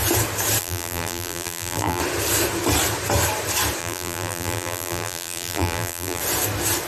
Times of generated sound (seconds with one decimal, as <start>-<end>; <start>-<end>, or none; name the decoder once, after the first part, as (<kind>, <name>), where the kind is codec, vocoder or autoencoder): 0.6-2.0 (vocoder, BigVGAN v2); 3.8-6.2